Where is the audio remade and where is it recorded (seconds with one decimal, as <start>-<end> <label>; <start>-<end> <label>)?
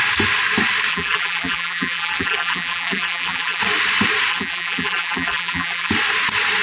0.0-0.9 recorded; 0.9-3.6 remade; 3.6-4.3 recorded; 4.3-5.9 remade; 5.9-6.6 recorded